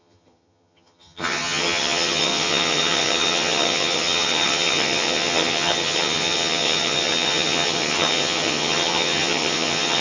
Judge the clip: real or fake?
fake